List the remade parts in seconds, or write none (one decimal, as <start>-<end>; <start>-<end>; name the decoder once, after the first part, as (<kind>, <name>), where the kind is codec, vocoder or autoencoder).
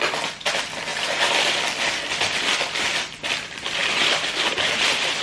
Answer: 0.9-1.6 (vocoder, BigVGAN v2); 3.8-5.2